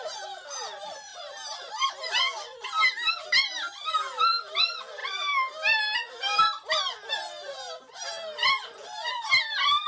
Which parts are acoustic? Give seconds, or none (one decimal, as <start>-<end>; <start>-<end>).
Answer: 0.0-9.9